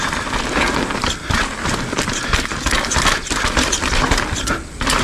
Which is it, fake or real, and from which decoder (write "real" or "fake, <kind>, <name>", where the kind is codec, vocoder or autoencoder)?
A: real